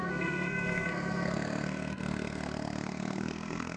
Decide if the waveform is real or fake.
fake